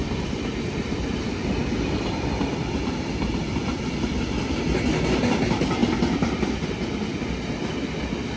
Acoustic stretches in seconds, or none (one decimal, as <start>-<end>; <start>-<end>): 4.5-5.8; 6.7-8.4